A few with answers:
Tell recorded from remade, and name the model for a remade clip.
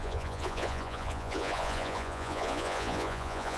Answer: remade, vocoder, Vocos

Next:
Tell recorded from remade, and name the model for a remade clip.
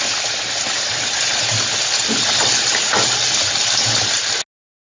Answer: recorded